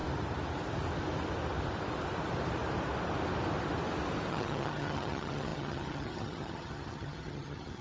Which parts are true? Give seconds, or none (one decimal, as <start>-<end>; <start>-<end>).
0.0-4.3